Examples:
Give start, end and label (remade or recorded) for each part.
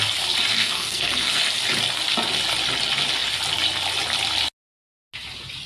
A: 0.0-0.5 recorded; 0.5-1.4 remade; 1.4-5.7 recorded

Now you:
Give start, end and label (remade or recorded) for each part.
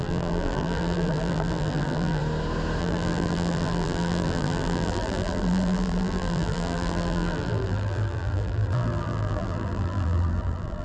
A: 0.0-2.2 remade; 2.2-2.8 recorded; 2.8-10.8 remade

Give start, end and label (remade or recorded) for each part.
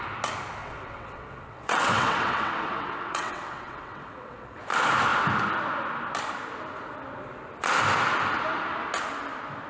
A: 0.0-0.6 recorded; 0.6-4.6 remade; 4.6-9.7 recorded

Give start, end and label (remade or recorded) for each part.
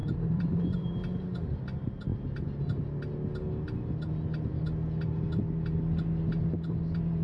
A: 0.0-1.0 remade; 1.0-7.2 recorded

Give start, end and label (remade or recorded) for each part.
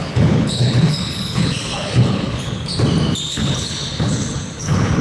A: 0.0-2.7 remade; 2.7-3.3 recorded; 3.3-5.0 remade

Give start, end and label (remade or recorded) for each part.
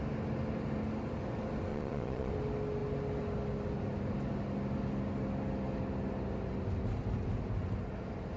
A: 0.0-1.7 recorded; 1.7-2.3 remade; 2.3-8.4 recorded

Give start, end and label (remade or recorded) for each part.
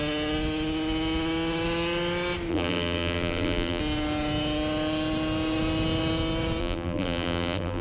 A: 0.0-2.5 recorded; 2.5-3.8 remade; 3.8-6.6 recorded; 6.6-7.8 remade